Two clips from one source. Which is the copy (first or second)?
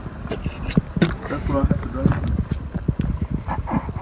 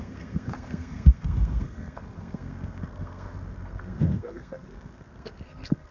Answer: second